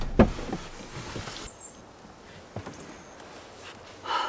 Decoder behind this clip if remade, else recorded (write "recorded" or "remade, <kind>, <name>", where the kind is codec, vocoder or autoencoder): recorded